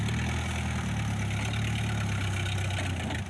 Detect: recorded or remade recorded